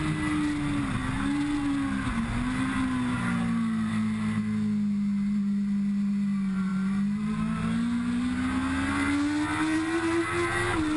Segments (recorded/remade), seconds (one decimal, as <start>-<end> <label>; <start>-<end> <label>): 0.0-11.0 recorded